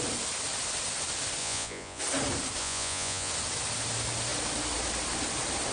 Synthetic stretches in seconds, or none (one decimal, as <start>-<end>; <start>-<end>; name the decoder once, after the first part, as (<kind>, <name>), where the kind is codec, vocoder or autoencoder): 1.4-2.0 (vocoder, Vocos); 2.6-3.3